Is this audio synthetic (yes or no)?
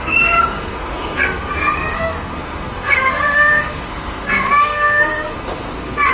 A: yes